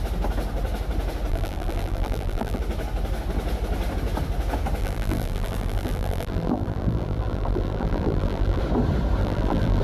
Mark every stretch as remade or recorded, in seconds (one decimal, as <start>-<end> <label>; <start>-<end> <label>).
0.0-1.3 recorded; 1.3-2.6 remade; 2.6-4.8 recorded; 4.8-8.6 remade; 8.6-9.2 recorded; 9.2-9.8 remade